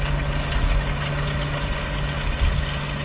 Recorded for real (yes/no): yes